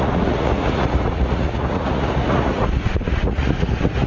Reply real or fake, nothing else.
fake